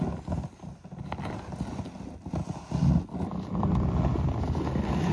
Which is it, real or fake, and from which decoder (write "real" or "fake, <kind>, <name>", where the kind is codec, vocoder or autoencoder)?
real